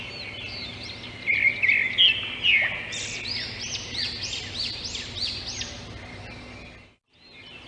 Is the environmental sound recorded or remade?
recorded